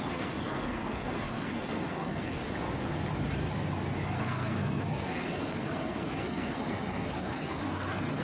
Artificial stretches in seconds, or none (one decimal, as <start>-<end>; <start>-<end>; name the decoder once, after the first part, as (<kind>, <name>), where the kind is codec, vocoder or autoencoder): 0.0-2.4 (codec, SNAC); 4.1-8.2